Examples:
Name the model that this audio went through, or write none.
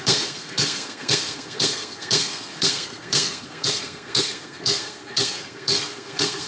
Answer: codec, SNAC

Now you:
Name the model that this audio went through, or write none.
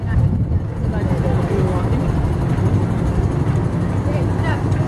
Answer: none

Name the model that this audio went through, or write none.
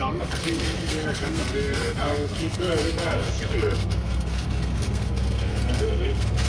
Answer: codec, SNAC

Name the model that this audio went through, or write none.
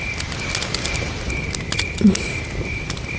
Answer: none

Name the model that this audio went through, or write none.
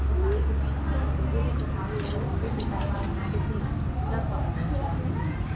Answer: none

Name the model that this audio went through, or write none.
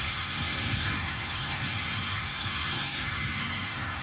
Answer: codec, SNAC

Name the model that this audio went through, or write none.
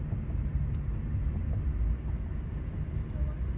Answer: none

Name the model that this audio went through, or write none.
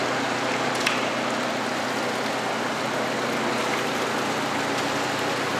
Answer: none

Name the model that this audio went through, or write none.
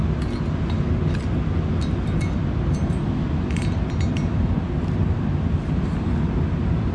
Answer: none